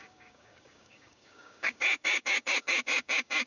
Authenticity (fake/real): fake